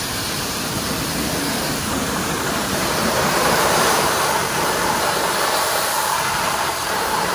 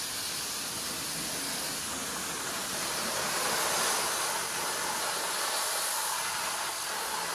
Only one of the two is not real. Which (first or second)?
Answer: first